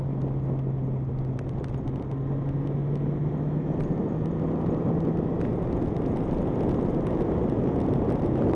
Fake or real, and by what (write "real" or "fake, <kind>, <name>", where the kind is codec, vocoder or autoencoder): real